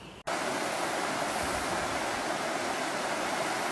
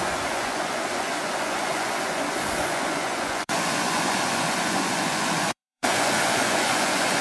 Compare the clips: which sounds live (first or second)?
first